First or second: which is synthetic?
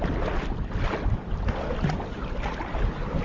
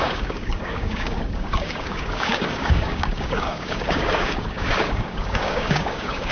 second